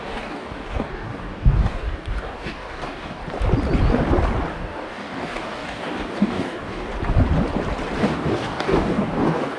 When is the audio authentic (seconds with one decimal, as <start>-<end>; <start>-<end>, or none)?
3.2-4.5; 6.9-8.0